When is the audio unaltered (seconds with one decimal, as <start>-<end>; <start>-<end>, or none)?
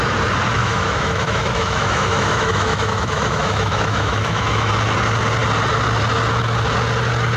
0.0-0.6; 4.7-7.4